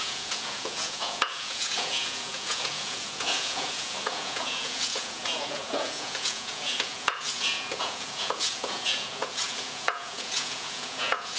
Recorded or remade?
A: remade